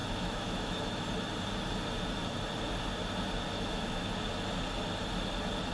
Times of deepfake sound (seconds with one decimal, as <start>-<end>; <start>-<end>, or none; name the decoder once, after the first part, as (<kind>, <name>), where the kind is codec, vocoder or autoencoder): 0.0-1.0 (autoencoder, DAC-VAE); 3.5-4.1